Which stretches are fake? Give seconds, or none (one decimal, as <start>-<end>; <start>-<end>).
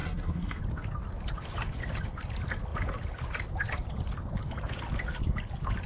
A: 0.0-0.6